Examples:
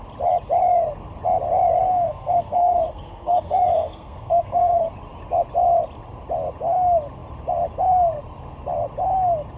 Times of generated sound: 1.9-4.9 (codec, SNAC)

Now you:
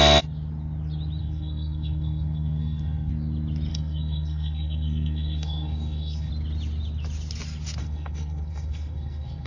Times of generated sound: 1.2-3.1 (codec, SNAC); 3.7-6.3; 7.8-9.5